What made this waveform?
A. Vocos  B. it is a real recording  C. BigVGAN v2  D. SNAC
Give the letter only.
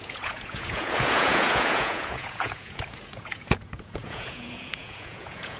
A